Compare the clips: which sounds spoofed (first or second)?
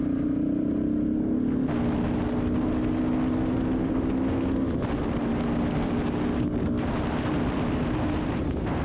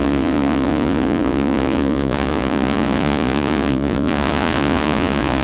second